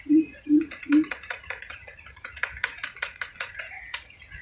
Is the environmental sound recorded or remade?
remade